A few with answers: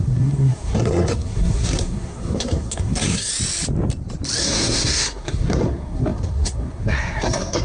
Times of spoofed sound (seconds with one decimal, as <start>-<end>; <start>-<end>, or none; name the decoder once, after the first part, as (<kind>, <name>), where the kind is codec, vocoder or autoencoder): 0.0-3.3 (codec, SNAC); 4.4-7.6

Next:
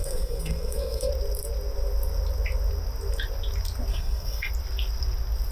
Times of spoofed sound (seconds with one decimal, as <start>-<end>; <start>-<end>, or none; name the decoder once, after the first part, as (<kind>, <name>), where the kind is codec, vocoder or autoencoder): 0.0-1.1 (codec, SNAC); 3.9-4.5

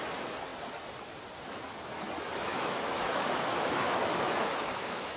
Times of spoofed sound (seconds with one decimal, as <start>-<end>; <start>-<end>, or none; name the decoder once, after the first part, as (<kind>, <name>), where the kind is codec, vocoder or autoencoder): 2.5-5.2 (autoencoder, DAC-VAE)